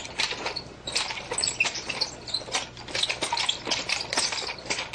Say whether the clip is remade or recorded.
recorded